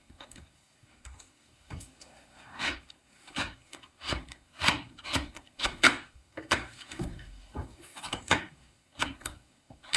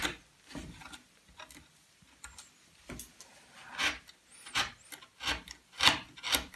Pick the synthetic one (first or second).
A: first